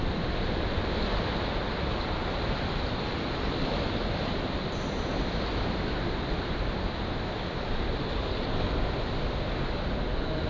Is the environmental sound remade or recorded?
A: recorded